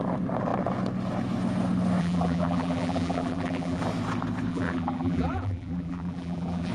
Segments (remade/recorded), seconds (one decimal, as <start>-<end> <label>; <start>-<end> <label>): 0.0-2.0 recorded; 2.0-3.8 remade; 3.8-4.5 recorded; 4.5-6.7 remade